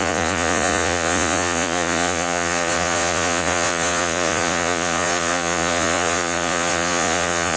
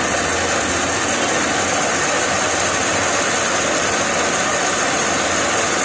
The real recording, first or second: second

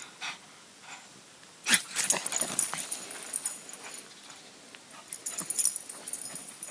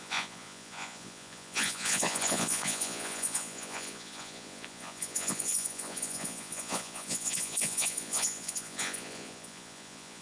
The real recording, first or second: first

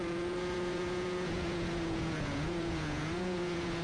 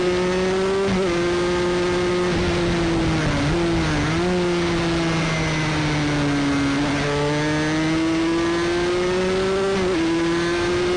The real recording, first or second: second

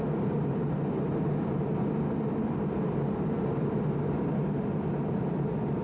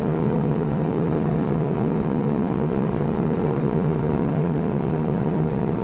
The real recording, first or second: first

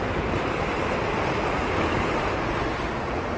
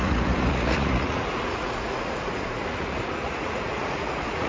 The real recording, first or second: first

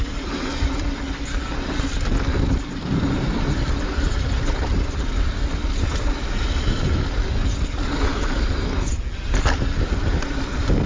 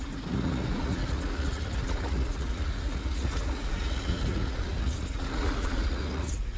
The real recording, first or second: first